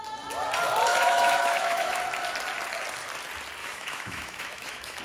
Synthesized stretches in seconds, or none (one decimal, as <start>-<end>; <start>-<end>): 0.9-2.0; 3.6-5.0